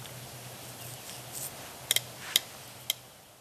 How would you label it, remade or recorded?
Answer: recorded